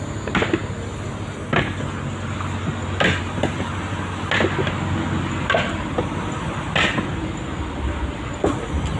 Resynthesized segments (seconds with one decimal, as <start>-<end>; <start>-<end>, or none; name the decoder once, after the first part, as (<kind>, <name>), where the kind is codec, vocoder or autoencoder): none